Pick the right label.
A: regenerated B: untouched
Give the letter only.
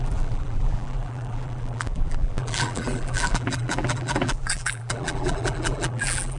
A